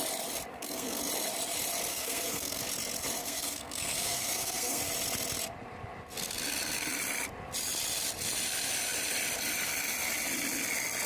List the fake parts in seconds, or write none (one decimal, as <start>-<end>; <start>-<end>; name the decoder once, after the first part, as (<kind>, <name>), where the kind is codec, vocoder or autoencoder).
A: 0.5-1.0 (codec, SNAC); 1.9-2.6; 3.2-4.8